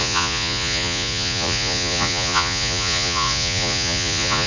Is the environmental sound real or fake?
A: fake